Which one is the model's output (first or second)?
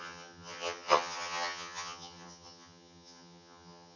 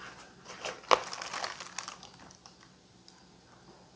first